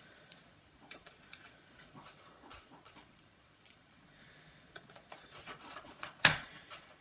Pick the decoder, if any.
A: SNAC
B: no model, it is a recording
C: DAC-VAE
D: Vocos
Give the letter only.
D